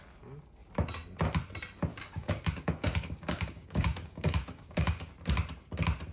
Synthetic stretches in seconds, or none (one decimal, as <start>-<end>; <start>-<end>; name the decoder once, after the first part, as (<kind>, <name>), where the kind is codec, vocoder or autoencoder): 1.9-5.1 (codec, DAC)